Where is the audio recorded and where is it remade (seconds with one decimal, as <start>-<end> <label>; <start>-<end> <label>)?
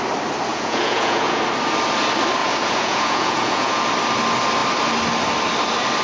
0.0-0.5 recorded; 0.5-1.4 remade; 1.4-2.4 recorded; 2.4-3.8 remade; 3.8-6.0 recorded